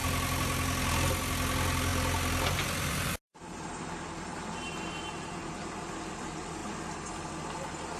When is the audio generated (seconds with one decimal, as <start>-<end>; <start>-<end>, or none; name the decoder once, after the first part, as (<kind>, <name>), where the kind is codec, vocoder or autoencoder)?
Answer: none